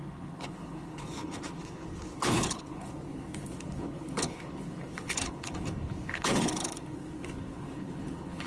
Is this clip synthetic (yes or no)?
yes